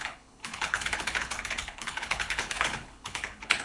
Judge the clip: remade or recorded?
remade